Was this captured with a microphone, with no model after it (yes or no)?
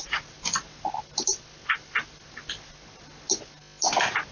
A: yes